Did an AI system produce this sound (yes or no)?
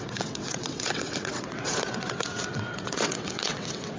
yes